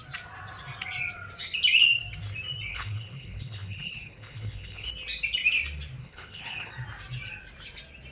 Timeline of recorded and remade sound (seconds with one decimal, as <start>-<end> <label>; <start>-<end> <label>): 0.0-2.7 recorded; 2.7-4.9 remade; 4.9-6.0 recorded; 6.0-6.7 remade; 6.7-8.1 recorded